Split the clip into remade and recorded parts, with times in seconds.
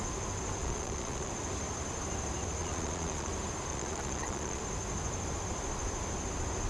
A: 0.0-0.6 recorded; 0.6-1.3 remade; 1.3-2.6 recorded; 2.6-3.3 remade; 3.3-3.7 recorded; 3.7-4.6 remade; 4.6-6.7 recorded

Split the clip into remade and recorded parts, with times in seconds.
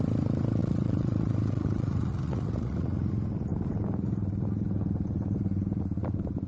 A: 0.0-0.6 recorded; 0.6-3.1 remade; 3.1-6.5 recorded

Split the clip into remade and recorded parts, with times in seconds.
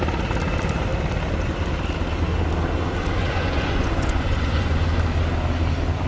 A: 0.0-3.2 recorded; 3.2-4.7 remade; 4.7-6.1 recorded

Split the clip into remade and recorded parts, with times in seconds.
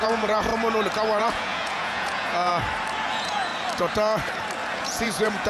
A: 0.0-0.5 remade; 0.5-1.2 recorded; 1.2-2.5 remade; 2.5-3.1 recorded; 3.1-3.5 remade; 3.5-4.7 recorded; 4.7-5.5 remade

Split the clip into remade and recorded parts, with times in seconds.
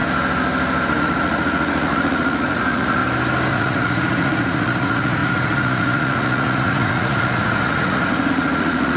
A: 0.0-1.0 recorded; 1.0-3.0 remade; 3.0-3.5 recorded; 3.5-9.0 remade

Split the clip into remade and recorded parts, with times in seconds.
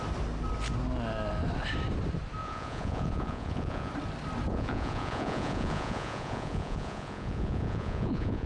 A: 0.0-2.4 recorded; 2.4-3.9 remade; 3.9-4.5 recorded; 4.5-8.5 remade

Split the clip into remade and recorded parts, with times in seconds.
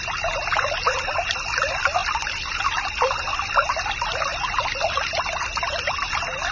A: 0.0-6.5 recorded